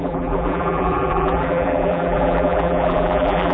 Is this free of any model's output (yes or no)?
no